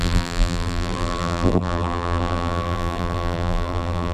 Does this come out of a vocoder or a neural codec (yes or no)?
yes